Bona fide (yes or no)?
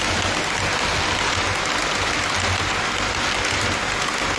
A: yes